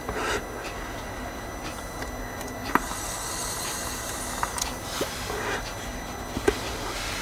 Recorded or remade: recorded